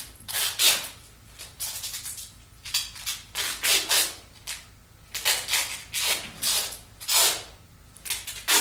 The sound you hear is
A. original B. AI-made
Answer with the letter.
A